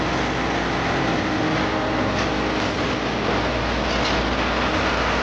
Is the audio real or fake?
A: real